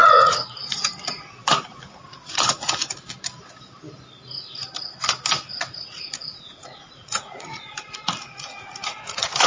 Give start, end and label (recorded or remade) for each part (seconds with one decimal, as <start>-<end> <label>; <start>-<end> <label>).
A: 0.0-3.0 remade; 3.0-5.5 recorded; 5.5-9.5 remade